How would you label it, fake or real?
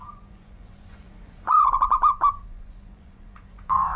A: fake